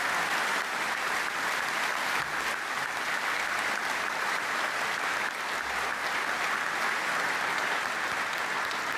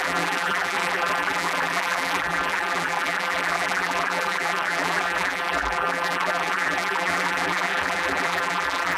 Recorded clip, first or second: first